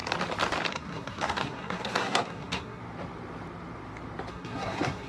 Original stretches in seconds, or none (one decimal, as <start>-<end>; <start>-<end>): 0.0-0.7; 2.8-4.3